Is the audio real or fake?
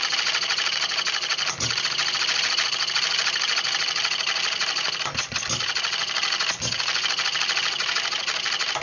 real